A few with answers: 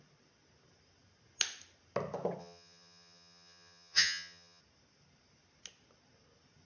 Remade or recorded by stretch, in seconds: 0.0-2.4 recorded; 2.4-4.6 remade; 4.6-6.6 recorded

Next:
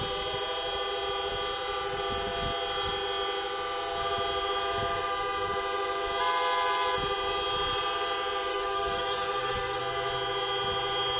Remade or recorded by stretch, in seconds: 0.0-8.5 recorded; 8.5-9.8 remade; 9.8-11.2 recorded